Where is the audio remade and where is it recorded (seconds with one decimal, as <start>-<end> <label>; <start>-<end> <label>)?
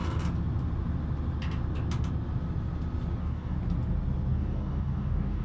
0.0-3.2 recorded; 3.2-3.6 remade; 3.6-4.3 recorded; 4.3-5.4 remade